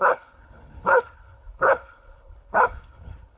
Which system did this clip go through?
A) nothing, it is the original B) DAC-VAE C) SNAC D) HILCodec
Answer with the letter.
D